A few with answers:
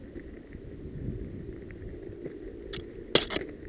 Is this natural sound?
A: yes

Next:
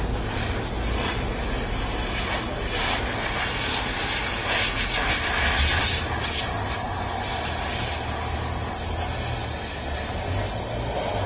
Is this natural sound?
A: yes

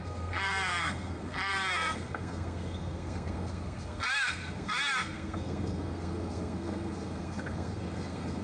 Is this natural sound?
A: no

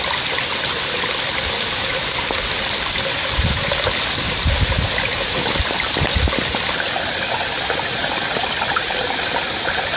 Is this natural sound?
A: yes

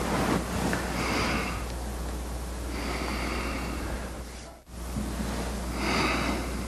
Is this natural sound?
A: yes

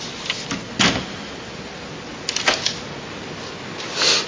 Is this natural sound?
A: yes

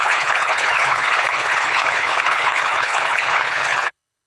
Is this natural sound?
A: no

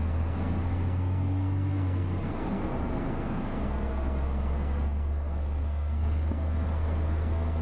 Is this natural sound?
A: no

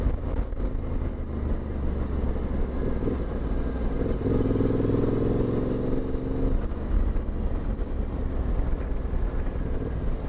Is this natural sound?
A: yes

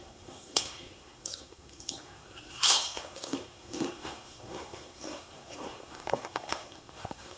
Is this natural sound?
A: no